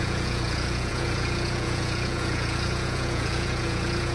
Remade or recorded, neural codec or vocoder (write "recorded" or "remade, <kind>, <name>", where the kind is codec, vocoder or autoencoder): remade, vocoder, Vocos